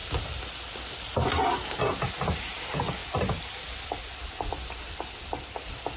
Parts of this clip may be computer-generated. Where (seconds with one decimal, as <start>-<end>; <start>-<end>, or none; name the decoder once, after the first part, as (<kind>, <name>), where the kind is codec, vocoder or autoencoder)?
none

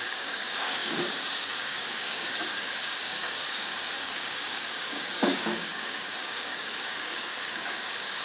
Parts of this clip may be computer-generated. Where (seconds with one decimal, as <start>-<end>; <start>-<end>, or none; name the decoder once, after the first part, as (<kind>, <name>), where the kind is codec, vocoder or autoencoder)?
0.0-8.2 (codec, DAC)

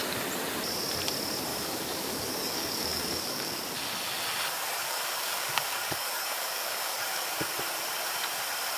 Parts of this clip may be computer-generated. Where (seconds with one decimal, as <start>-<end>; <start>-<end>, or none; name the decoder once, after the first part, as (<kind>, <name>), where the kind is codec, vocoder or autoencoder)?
1.5-3.6 (codec, DAC); 4.8-7.5

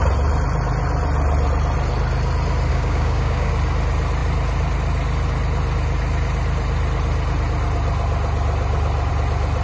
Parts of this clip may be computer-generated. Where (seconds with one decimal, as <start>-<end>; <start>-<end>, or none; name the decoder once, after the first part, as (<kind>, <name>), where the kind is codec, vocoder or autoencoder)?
2.7-3.5 (codec, DAC)